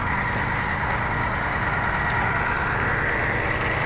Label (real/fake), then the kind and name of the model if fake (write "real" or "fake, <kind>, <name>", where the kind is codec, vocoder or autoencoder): real